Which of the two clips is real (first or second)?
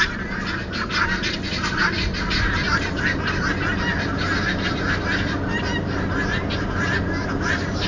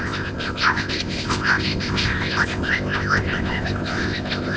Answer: first